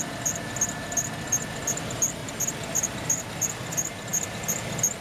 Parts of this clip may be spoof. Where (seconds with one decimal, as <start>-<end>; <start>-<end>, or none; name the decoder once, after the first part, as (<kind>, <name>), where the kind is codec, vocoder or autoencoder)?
4.1-5.0 (vocoder, BigVGAN v2)